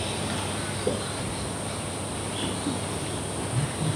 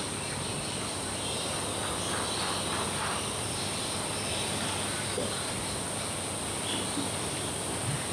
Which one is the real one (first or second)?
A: first